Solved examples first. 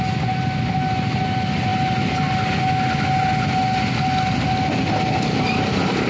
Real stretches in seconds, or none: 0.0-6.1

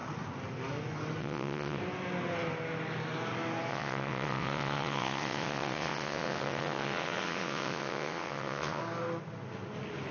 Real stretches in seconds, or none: 0.0-1.2; 1.8-3.7; 8.8-10.1

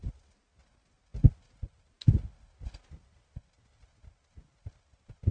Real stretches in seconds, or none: 0.0-5.3

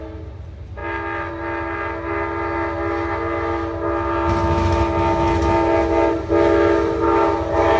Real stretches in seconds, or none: 0.0-7.8

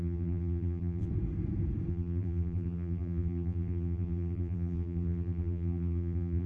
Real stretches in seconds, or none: 1.1-1.9

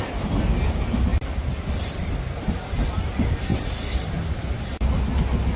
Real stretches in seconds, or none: 0.0-3.5; 4.6-5.6